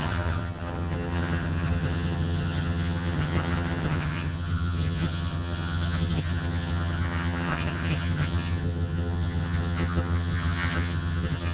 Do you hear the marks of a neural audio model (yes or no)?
yes